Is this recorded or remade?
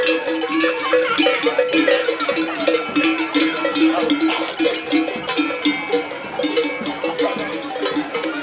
recorded